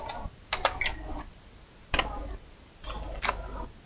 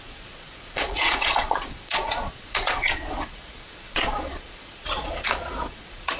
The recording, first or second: first